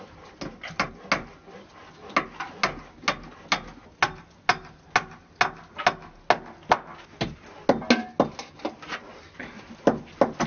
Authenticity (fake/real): real